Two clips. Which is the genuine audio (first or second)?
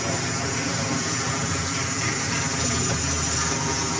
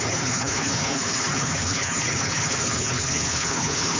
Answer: first